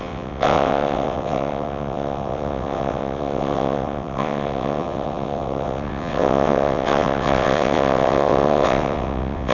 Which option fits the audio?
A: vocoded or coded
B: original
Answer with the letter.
A